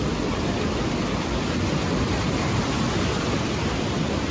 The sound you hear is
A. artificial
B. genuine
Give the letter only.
B